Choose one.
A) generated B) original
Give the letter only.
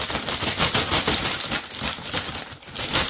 B